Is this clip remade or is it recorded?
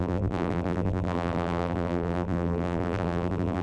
remade